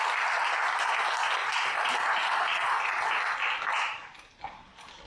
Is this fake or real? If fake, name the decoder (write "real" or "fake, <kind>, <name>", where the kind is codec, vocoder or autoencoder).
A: real